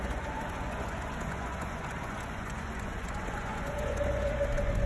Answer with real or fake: fake